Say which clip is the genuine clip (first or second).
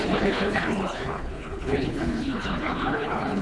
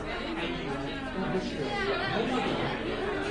second